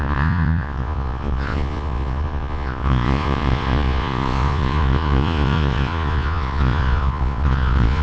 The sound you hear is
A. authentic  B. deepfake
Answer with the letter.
B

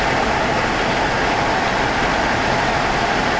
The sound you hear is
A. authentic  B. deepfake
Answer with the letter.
A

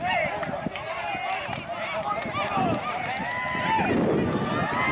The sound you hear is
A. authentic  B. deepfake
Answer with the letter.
A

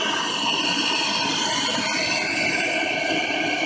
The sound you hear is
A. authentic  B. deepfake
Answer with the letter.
A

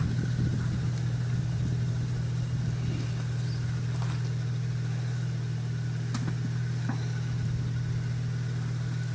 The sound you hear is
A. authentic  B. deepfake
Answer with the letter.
A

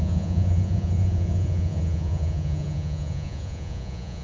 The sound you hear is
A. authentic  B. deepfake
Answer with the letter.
B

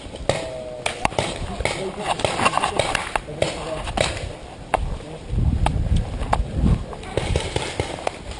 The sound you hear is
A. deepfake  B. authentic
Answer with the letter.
B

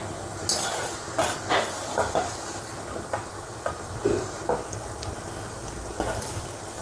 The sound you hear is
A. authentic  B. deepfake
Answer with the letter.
A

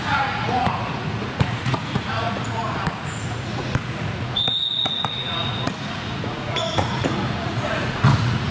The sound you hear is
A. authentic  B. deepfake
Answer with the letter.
B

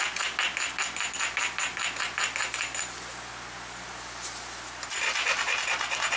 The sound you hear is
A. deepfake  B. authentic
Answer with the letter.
B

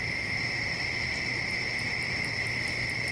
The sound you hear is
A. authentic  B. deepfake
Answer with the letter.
A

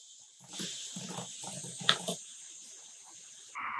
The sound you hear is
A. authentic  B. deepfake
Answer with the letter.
A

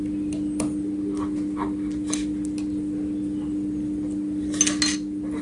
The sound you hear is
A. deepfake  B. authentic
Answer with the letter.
B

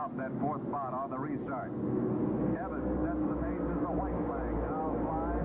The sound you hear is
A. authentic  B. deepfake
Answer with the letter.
A